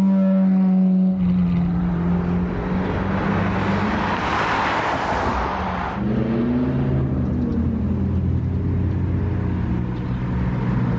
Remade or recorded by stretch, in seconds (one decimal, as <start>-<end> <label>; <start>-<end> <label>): 0.0-11.0 recorded